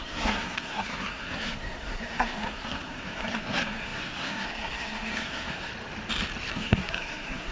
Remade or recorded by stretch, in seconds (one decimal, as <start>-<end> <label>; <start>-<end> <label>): 0.0-5.7 remade; 5.7-6.5 recorded; 6.5-7.5 remade